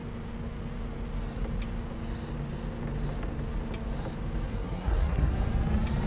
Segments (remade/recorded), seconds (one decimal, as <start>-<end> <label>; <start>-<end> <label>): 0.0-4.5 recorded; 4.5-5.3 remade; 5.3-6.1 recorded